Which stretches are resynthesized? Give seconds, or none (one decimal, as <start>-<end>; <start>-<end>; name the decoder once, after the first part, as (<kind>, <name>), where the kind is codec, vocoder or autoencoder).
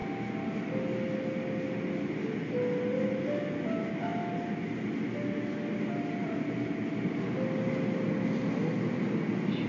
none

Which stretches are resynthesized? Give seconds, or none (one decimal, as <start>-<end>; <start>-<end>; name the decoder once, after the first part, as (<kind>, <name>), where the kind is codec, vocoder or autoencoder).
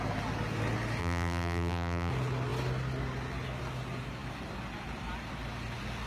1.0-2.1 (vocoder, BigVGAN v2)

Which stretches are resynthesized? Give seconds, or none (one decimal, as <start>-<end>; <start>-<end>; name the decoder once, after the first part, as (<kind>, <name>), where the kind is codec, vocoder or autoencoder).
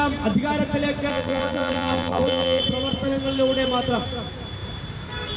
1.1-2.6 (vocoder, BigVGAN v2)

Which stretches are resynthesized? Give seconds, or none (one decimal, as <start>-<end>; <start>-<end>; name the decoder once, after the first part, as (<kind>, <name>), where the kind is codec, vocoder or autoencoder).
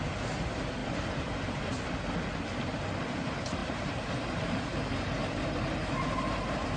0.8-1.6 (vocoder, BigVGAN v2); 3.6-6.8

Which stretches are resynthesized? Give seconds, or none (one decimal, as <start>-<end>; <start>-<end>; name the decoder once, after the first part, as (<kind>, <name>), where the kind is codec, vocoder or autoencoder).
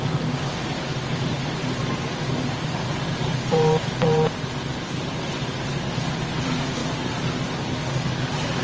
0.0-6.8 (vocoder, BigVGAN v2); 7.9-8.6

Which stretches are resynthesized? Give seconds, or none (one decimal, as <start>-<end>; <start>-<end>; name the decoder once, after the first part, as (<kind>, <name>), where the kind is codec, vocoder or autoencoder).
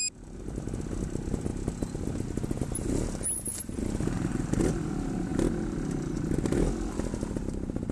none